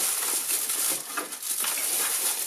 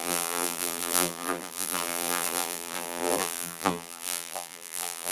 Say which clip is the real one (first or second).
first